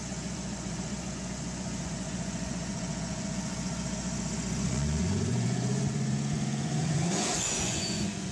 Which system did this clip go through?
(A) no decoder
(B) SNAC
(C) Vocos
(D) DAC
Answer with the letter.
C